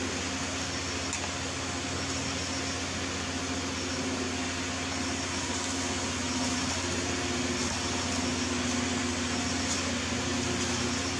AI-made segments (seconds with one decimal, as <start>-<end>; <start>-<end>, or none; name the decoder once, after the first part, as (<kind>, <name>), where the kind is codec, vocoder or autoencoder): none